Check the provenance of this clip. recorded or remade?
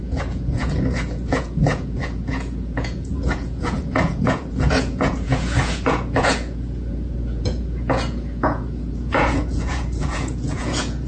remade